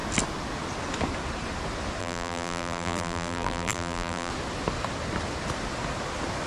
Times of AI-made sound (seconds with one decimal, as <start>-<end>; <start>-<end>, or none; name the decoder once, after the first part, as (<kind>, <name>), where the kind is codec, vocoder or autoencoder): 2.0-4.3 (vocoder, BigVGAN v2)